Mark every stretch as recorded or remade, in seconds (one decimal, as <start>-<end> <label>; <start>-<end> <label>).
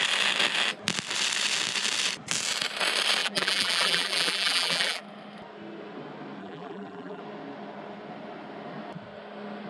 0.0-3.2 recorded; 3.2-5.0 remade; 5.0-6.4 recorded; 6.4-7.2 remade; 7.2-9.7 recorded